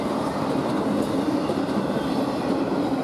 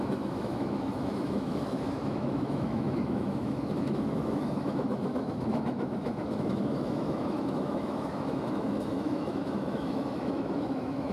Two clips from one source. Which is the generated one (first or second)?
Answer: second